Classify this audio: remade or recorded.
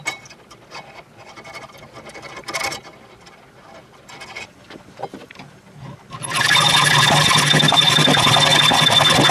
recorded